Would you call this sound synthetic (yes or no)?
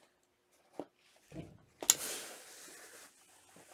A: no